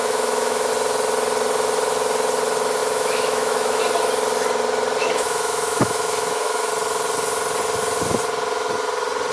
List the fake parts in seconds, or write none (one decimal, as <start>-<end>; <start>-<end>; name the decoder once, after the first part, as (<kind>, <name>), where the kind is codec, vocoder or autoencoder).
0.0-0.7 (autoencoder, DAC-VAE); 2.8-3.8; 5.0-6.7